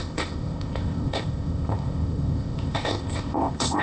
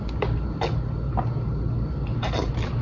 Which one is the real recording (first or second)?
second